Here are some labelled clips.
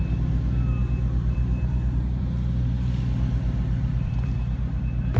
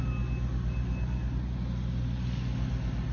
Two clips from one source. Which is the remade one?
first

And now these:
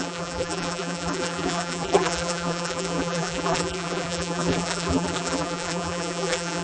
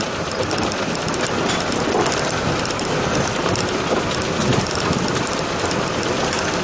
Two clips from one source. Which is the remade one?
first